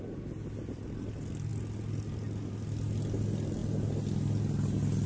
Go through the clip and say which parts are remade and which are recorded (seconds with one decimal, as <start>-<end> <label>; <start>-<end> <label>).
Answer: 0.0-5.1 recorded